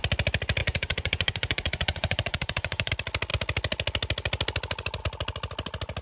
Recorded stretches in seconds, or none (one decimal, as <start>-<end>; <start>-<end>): 0.0-0.6; 2.9-6.0